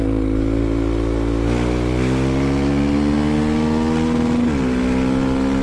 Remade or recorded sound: recorded